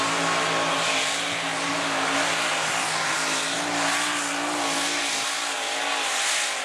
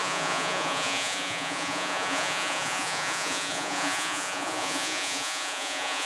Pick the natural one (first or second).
first